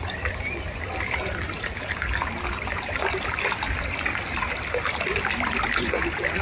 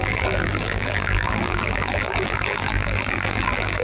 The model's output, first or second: second